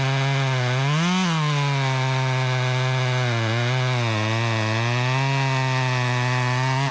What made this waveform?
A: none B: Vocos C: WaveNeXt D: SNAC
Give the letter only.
A